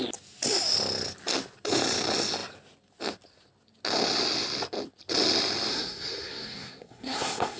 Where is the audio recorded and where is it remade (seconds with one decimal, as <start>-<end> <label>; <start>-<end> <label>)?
0.0-5.7 recorded; 5.7-7.6 remade

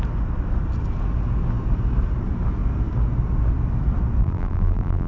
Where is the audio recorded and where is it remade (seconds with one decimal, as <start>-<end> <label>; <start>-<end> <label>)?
0.0-4.2 recorded; 4.2-5.1 remade

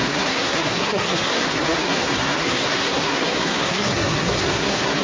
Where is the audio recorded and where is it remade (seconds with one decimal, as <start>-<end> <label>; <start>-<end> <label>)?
0.0-5.0 remade

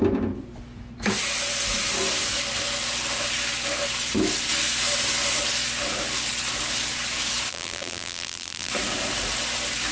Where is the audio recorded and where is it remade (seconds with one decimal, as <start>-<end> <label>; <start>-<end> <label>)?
0.0-7.5 recorded; 7.5-8.7 remade; 8.7-9.9 recorded